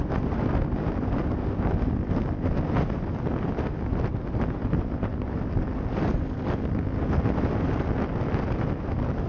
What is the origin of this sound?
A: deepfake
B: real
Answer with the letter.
B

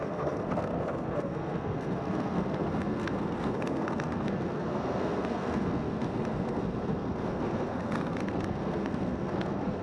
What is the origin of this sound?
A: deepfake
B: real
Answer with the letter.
A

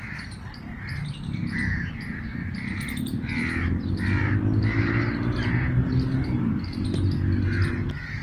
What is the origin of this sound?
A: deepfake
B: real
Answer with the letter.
B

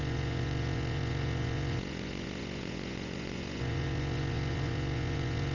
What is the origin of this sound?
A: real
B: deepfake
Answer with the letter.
B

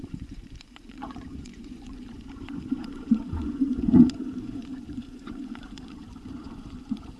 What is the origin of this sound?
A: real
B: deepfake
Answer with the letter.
B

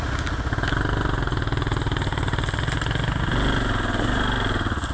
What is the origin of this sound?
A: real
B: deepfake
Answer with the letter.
A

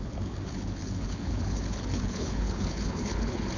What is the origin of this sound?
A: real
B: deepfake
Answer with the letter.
B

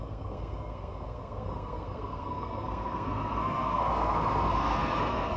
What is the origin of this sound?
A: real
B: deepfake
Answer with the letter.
B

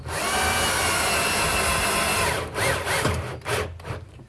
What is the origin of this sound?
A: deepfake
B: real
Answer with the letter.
B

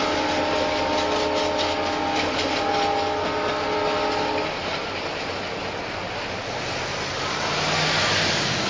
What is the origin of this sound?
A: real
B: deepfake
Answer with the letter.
A